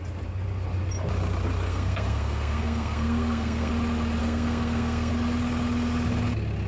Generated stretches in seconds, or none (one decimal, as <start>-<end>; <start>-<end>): 1.7-3.7; 4.2-5.1